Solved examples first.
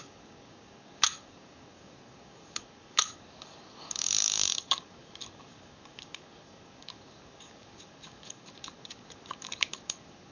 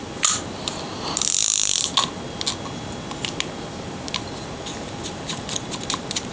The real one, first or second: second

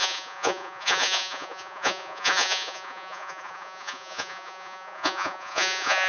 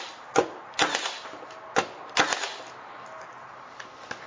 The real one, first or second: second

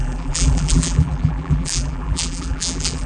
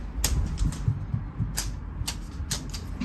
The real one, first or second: second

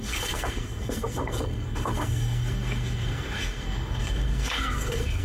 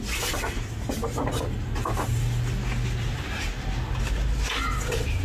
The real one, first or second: second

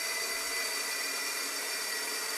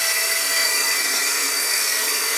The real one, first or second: first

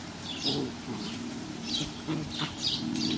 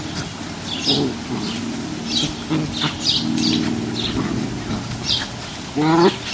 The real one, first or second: second